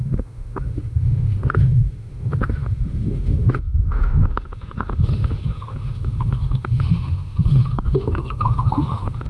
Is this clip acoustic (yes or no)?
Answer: no